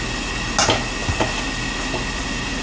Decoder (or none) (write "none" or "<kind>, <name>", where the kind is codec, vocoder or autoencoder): none